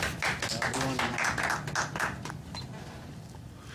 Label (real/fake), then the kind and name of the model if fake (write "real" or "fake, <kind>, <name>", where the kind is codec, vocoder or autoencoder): real